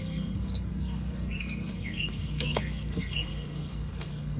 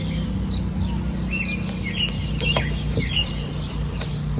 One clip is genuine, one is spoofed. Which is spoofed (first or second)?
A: first